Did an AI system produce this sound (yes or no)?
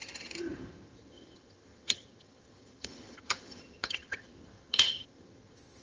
yes